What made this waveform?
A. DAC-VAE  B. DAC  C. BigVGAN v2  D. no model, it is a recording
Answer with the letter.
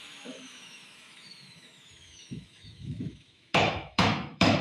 A